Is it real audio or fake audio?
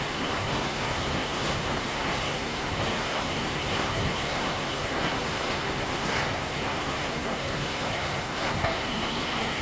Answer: fake